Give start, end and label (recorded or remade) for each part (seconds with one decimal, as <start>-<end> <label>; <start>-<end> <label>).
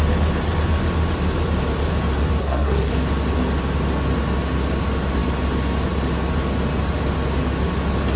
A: 0.0-2.4 recorded; 2.4-2.9 remade; 2.9-8.2 recorded